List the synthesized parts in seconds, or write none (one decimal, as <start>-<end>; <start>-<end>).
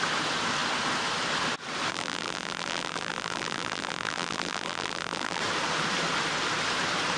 1.9-5.4